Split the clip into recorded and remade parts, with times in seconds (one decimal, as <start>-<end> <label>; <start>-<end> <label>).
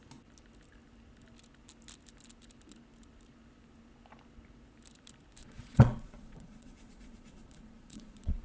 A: 0.0-5.4 recorded; 5.4-8.4 remade